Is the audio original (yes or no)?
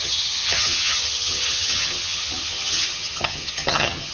no